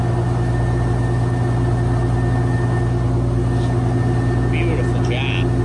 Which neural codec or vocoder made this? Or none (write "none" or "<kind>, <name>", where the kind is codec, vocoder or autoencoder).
none